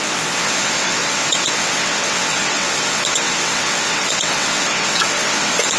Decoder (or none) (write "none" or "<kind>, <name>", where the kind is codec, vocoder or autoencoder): vocoder, WaveNeXt